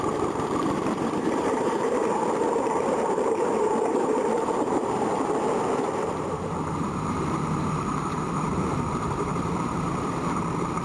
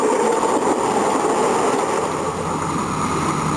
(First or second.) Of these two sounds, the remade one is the first